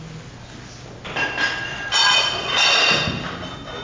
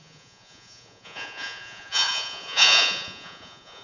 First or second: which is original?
first